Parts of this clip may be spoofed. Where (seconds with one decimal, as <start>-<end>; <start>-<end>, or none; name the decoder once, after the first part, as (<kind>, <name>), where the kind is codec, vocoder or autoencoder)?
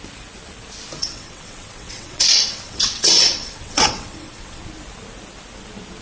1.0-4.6 (vocoder, WaveNeXt)